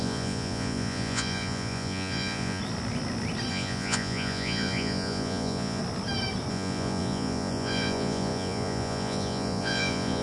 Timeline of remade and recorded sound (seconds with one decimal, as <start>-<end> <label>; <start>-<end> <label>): 0.0-2.6 remade; 2.6-3.5 recorded; 3.5-5.8 remade; 5.8-6.5 recorded; 6.5-10.2 remade